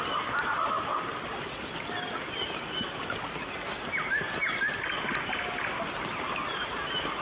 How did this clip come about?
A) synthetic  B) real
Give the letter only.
B